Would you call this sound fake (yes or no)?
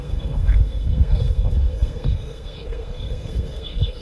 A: yes